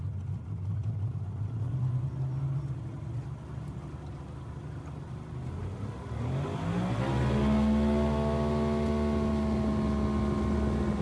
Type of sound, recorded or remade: recorded